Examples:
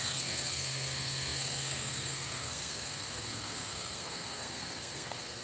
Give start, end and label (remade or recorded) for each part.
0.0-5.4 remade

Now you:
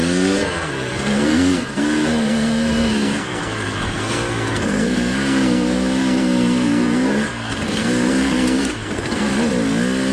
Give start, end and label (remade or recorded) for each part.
0.0-9.3 remade; 9.3-10.1 recorded

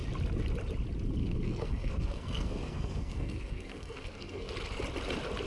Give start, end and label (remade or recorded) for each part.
0.0-1.2 recorded; 1.2-4.5 remade; 4.5-5.5 recorded